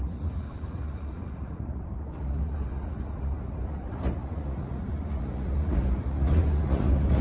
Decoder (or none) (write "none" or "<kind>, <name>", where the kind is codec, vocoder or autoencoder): vocoder, Vocos